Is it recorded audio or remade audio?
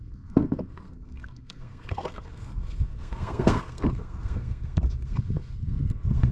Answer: remade